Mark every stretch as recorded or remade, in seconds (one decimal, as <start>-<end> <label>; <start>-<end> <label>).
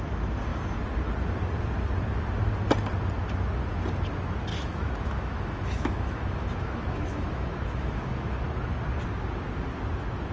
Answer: 0.0-4.5 recorded; 4.5-8.4 remade; 8.4-10.3 recorded